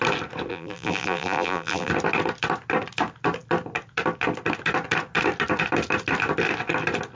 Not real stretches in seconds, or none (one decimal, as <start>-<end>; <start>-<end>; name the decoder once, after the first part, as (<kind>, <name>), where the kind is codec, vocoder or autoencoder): 0.5-1.9 (vocoder, BigVGAN v2)